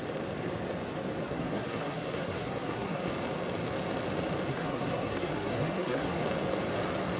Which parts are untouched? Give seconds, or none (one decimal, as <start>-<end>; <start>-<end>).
0.0-1.2; 3.1-4.5; 6.2-7.2